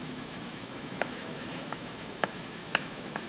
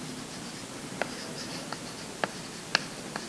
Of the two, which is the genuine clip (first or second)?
second